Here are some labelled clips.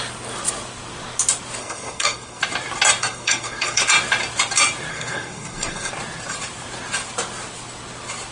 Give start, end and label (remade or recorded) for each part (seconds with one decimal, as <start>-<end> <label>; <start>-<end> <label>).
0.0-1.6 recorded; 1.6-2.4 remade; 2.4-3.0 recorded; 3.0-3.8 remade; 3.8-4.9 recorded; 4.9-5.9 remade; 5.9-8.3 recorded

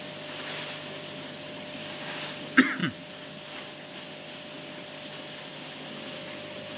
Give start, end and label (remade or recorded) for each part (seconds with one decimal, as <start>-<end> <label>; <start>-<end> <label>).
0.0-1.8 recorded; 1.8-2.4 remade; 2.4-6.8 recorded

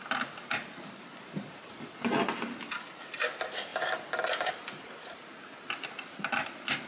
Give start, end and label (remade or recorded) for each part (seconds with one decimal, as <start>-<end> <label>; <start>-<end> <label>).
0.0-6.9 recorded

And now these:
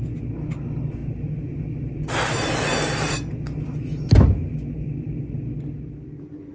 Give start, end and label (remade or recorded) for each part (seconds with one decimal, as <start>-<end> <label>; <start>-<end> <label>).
0.0-6.5 recorded

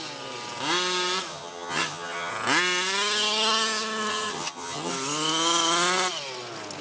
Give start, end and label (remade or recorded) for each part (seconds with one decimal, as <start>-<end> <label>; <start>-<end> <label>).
0.0-1.3 recorded; 1.3-2.3 remade; 2.3-4.1 recorded; 4.1-4.9 remade; 4.9-6.8 recorded

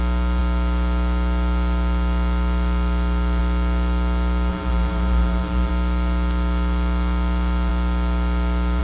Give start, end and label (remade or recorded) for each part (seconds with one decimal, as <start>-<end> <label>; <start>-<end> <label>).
0.0-4.5 recorded; 4.5-5.7 remade; 5.7-8.8 recorded

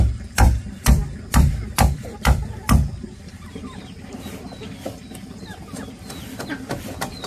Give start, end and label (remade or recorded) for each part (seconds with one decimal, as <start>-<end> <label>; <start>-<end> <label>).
0.0-7.3 remade